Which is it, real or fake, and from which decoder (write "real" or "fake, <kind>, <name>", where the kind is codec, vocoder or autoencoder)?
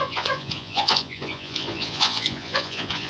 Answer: fake, vocoder, Vocos